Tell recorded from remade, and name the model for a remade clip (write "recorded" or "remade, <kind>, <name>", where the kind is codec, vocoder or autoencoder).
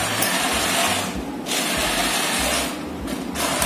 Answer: recorded